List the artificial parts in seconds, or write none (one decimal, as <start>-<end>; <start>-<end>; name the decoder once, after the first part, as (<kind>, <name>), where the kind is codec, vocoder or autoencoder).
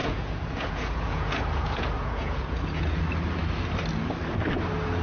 0.0-3.0 (vocoder, Vocos)